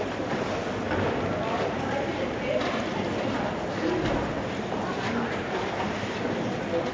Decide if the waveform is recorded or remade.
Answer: recorded